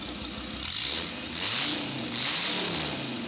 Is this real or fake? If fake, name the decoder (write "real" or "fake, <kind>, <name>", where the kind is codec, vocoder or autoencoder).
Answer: real